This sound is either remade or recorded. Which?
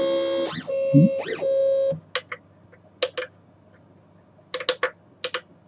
recorded